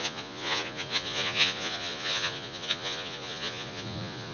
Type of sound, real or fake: fake